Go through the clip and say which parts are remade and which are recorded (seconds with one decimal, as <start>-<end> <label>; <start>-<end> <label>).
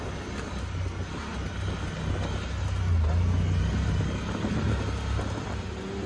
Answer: 0.0-6.1 recorded